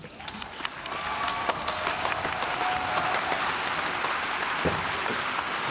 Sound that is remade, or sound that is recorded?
recorded